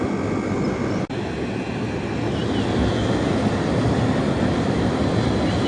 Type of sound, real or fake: real